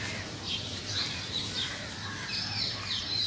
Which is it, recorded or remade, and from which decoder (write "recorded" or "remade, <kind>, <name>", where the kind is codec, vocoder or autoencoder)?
recorded